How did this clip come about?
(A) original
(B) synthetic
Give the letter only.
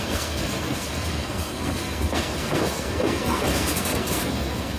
B